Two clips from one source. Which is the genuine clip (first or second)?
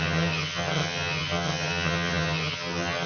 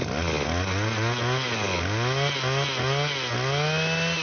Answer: second